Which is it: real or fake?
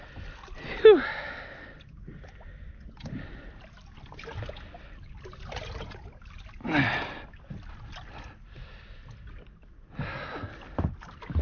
real